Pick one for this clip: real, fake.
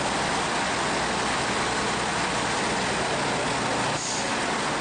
real